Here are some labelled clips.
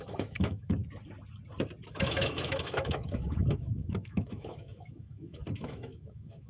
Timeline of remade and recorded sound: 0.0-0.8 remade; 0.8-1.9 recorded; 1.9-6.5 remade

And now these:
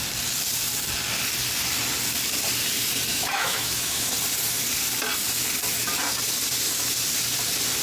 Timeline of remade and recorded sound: 0.0-3.1 recorded; 3.1-4.1 remade; 4.1-7.8 recorded